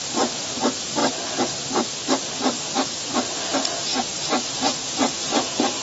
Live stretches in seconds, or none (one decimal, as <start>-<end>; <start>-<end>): 0.0-5.8